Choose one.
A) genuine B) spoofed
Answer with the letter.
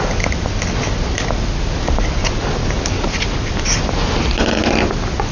A